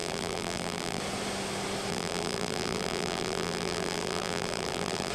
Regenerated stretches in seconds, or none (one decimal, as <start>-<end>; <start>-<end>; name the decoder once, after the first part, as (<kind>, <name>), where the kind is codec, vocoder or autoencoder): 0.0-1.0 (vocoder, BigVGAN v2); 1.9-5.1